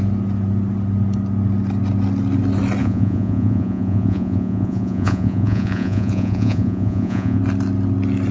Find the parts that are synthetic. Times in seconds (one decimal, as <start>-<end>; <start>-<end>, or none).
2.8-7.4